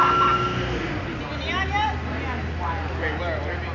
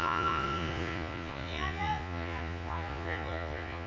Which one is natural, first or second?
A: first